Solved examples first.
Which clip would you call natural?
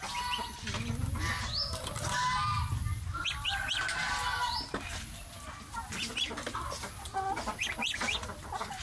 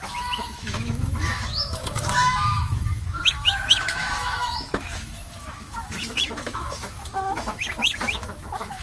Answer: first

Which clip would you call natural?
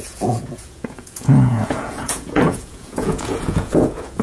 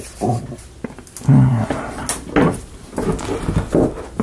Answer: second